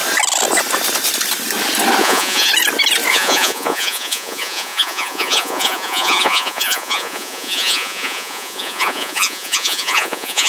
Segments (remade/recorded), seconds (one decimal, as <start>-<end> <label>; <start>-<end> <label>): 0.0-2.0 recorded; 2.0-2.5 remade; 2.5-3.1 recorded; 3.1-10.5 remade